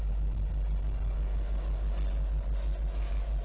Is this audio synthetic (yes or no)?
no